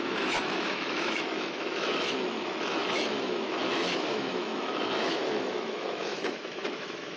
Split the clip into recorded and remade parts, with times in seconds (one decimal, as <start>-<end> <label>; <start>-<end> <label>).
0.0-7.2 remade